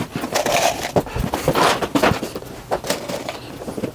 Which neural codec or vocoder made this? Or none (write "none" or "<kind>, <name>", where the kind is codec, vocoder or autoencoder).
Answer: none